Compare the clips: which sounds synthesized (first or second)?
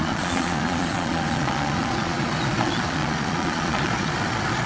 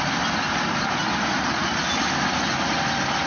first